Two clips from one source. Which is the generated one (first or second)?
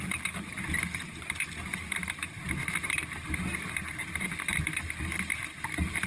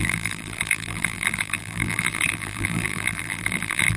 second